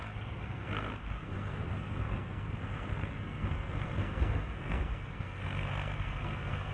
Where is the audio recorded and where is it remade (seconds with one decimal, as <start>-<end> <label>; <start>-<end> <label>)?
0.0-6.7 remade